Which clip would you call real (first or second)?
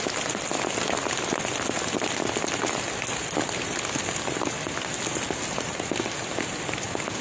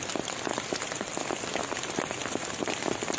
first